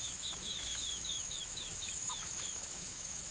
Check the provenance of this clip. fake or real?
fake